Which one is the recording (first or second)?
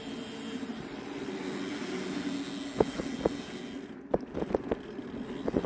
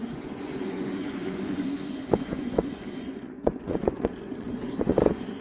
first